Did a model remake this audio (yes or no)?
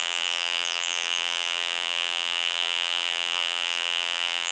yes